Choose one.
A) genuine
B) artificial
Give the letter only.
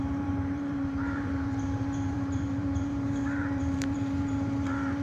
B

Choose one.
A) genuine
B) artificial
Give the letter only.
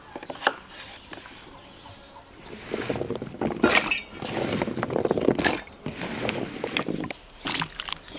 A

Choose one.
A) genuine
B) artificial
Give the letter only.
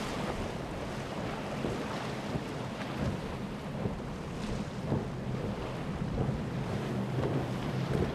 A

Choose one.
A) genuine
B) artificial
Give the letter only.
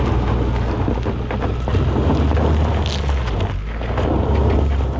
A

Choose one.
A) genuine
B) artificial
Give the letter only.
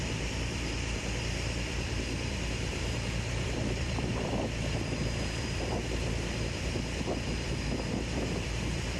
B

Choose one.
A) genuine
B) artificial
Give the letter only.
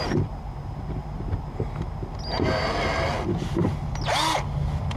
A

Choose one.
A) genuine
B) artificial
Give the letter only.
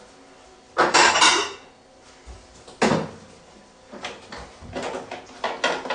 A